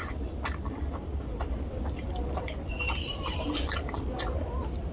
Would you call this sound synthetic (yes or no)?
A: no